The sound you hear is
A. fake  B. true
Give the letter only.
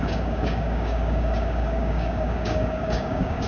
A